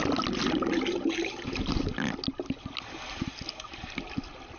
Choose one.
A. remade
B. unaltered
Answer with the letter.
B